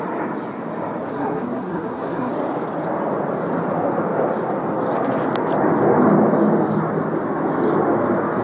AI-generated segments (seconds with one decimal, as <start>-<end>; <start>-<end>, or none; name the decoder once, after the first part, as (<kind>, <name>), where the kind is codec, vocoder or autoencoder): 1.1-2.3 (codec, SNAC)